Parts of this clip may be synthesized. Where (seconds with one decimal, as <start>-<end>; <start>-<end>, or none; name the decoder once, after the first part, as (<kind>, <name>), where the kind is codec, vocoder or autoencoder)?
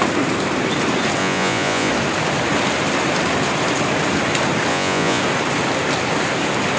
1.2-1.9 (vocoder, Vocos); 4.7-5.2